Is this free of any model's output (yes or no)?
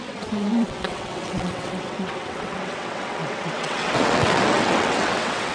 no